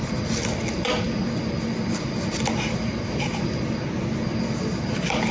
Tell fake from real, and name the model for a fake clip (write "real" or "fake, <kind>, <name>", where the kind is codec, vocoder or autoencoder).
real